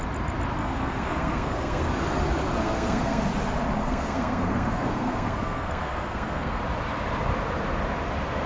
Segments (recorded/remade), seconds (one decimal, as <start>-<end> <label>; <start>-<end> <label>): 0.0-0.6 recorded; 0.6-1.9 remade; 1.9-2.6 recorded; 2.6-3.2 remade; 3.2-3.8 recorded; 3.8-6.6 remade; 6.6-8.5 recorded